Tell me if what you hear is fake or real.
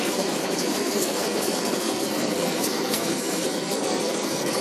fake